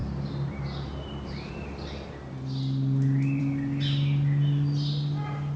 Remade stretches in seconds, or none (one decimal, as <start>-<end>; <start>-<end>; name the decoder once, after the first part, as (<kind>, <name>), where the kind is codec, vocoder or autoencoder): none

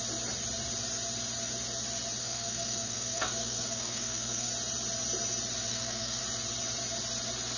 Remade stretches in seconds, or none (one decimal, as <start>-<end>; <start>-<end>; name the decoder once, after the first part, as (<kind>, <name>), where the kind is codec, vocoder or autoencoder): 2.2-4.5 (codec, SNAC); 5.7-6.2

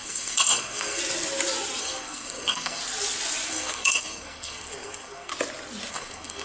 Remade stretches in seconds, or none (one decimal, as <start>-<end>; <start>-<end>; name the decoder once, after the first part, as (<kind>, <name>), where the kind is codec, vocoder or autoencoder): 0.0-1.0 (codec, SNAC); 1.8-2.8; 3.5-5.3; 5.9-6.4

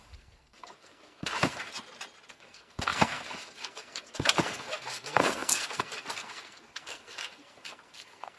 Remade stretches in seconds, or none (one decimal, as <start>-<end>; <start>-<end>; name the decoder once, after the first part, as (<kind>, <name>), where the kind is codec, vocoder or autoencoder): 0.0-1.7 (codec, SNAC); 2.3-8.4

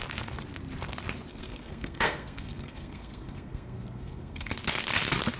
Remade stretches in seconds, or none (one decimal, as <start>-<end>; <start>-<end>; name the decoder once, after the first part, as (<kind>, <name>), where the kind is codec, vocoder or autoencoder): 1.3-4.5 (codec, SNAC)